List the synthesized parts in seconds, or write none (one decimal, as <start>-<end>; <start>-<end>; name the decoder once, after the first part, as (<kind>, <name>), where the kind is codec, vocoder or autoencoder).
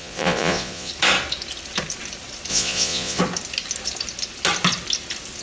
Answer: 0.0-0.9 (vocoder, Vocos); 2.5-3.2